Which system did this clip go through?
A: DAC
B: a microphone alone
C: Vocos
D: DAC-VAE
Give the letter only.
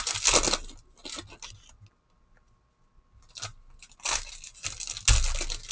B